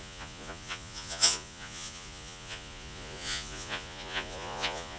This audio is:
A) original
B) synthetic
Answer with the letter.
B